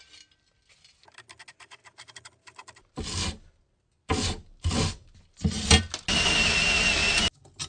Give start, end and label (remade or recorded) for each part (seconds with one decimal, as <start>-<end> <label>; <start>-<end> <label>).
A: 0.0-7.7 recorded